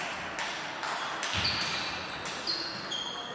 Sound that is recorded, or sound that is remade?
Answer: recorded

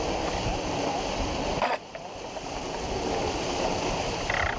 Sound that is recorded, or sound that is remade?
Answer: recorded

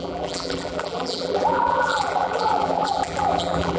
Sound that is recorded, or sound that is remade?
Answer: remade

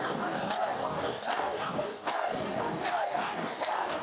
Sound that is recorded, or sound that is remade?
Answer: remade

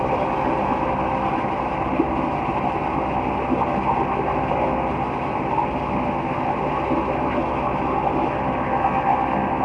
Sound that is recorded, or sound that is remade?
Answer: recorded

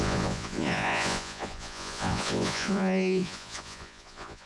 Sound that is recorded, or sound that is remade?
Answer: remade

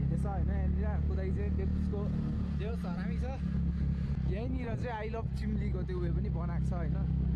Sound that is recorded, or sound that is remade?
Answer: recorded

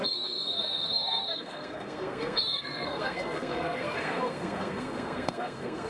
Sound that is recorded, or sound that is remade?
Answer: remade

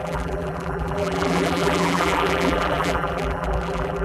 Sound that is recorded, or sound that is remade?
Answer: remade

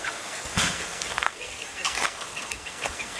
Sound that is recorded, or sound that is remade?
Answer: remade